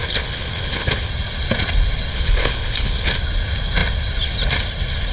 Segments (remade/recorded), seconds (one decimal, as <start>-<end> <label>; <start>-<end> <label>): 0.0-1.1 remade; 1.1-2.1 recorded; 2.1-3.2 remade; 3.2-5.1 recorded